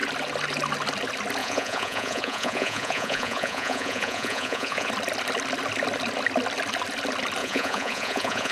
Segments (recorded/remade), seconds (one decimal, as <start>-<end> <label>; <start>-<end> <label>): 0.0-1.4 recorded; 1.4-4.9 remade; 4.9-7.4 recorded; 7.4-8.5 remade